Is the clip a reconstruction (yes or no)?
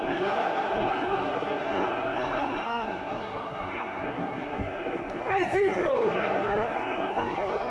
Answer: yes